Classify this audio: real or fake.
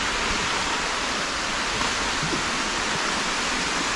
real